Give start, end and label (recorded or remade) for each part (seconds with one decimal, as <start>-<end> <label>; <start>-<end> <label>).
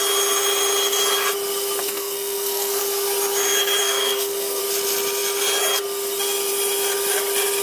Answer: 0.0-1.8 recorded; 1.8-2.8 remade; 2.8-3.8 recorded; 3.8-4.6 remade; 4.6-7.6 recorded